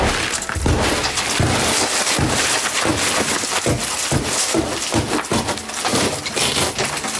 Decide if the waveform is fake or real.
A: real